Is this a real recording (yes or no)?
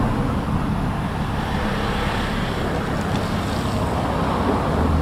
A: yes